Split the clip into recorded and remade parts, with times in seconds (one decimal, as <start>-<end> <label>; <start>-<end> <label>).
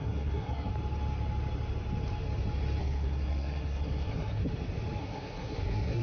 0.0-0.7 remade; 0.7-2.8 recorded; 2.8-4.4 remade; 4.4-5.0 recorded; 5.0-6.0 remade